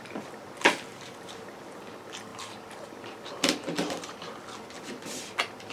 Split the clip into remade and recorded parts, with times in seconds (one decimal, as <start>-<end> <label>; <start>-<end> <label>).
0.0-0.9 recorded; 0.9-1.9 remade; 1.9-5.7 recorded